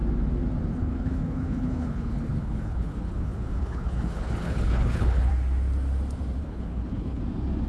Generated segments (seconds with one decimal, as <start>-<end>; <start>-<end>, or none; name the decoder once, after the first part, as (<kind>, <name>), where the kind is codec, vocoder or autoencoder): 0.7-5.3 (codec, HILCodec); 6.4-7.2